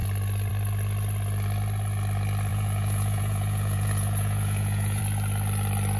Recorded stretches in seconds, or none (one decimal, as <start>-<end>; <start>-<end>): 0.0-2.5; 5.0-6.0